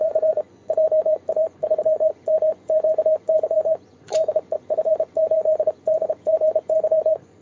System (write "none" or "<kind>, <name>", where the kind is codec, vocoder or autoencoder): vocoder, Vocos